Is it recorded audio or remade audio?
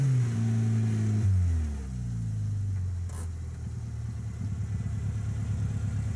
recorded